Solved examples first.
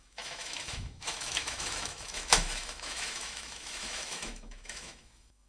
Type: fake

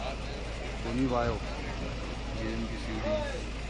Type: real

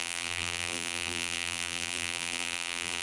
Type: fake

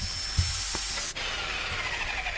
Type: real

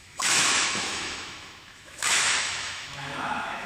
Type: fake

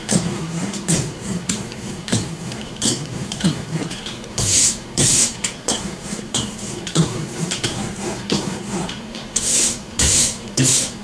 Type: fake